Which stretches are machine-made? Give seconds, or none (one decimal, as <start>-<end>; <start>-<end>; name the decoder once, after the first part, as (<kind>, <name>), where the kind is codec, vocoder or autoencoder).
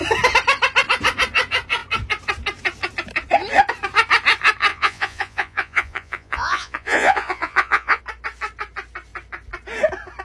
4.7-8.0 (vocoder, Vocos)